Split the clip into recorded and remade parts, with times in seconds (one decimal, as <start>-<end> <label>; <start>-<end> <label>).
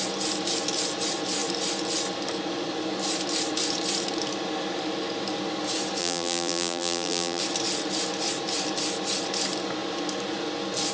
0.0-6.0 recorded; 6.0-7.4 remade; 7.4-10.9 recorded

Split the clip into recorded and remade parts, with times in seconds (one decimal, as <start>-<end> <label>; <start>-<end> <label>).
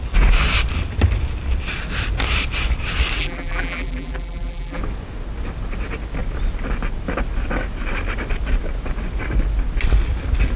0.0-3.2 recorded; 3.2-4.8 remade; 4.8-10.6 recorded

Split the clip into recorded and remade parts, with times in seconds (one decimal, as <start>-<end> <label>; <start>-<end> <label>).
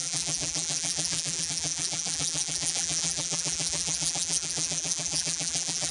0.0-5.9 remade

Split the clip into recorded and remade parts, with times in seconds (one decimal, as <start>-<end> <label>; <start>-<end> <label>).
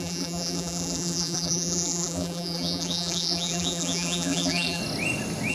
0.0-4.8 remade; 4.8-5.5 recorded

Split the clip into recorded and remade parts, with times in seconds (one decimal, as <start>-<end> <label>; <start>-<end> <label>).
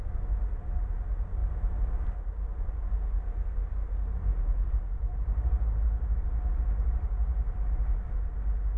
0.0-4.3 recorded; 4.3-8.3 remade; 8.3-8.8 recorded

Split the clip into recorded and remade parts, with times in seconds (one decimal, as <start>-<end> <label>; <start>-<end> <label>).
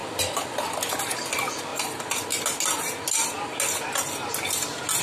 0.0-1.7 remade; 1.7-5.0 recorded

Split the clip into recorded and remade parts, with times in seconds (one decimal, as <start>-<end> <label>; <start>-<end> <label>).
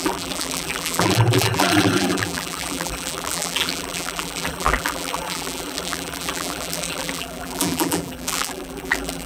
0.0-9.3 remade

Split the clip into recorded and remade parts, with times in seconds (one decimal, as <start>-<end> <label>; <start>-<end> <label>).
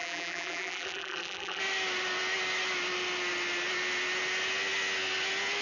0.0-1.6 remade; 1.6-5.6 recorded